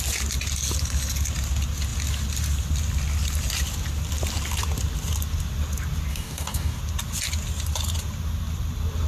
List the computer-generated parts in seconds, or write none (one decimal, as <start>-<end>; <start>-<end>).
6.1-6.8